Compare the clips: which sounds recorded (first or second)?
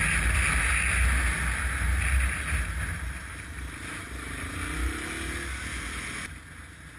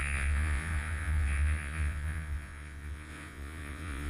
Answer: first